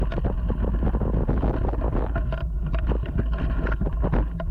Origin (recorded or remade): recorded